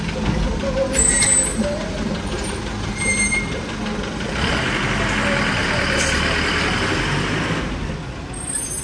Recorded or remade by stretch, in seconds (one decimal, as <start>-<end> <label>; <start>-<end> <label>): 0.0-1.1 recorded; 1.1-4.8 remade; 4.8-5.6 recorded; 5.6-6.9 remade; 6.9-8.8 recorded